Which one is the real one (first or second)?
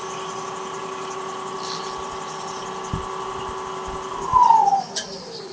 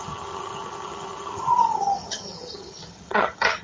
first